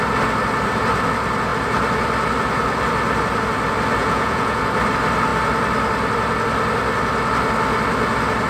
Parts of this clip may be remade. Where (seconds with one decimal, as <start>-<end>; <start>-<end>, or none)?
4.0-4.6

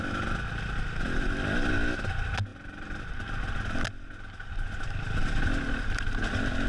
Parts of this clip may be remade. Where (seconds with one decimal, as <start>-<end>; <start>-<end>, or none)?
none

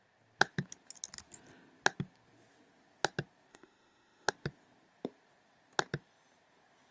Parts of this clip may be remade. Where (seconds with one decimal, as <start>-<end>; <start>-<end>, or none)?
3.5-4.3

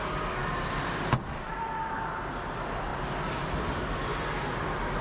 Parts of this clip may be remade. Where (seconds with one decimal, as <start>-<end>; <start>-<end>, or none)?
0.4-1.8